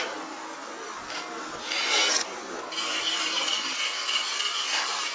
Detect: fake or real real